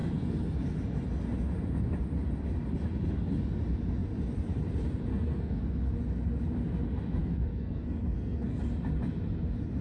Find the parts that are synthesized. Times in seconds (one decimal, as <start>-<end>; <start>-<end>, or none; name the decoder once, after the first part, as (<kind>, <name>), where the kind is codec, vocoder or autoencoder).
5.1-5.6 (codec, SNAC); 7.2-8.6